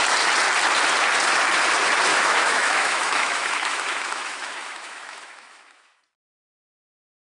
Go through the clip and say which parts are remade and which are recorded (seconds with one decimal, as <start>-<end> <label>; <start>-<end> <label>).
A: 0.0-2.1 recorded; 2.1-6.0 remade; 6.0-7.3 recorded